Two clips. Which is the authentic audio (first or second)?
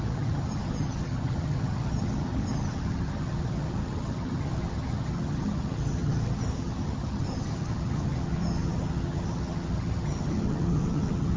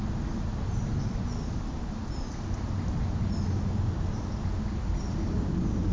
second